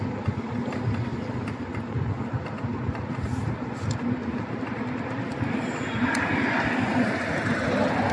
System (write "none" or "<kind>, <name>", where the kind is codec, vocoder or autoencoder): none